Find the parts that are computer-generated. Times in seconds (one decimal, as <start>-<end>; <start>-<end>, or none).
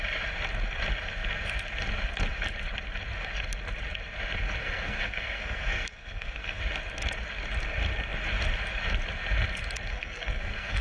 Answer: 4.6-6.6; 9.9-10.8